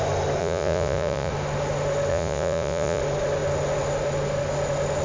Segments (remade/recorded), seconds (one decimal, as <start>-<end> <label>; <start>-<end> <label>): 0.0-0.4 recorded; 0.4-1.3 remade; 1.3-2.1 recorded; 2.1-3.0 remade; 3.0-5.0 recorded